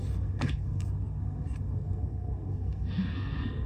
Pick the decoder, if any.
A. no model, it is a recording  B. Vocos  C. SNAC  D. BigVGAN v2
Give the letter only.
C